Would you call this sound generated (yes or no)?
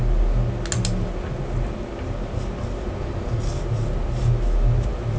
no